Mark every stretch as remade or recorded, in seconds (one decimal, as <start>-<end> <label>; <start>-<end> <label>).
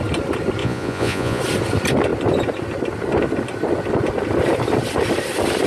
0.0-0.6 recorded; 0.6-1.4 remade; 1.4-5.7 recorded